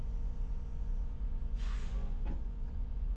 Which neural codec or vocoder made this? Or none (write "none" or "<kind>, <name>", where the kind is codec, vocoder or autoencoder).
vocoder, Vocos